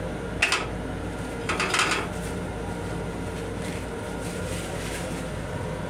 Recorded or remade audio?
recorded